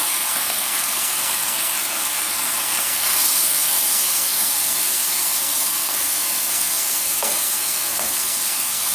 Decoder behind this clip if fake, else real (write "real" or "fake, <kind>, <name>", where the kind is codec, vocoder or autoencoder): fake, codec, SNAC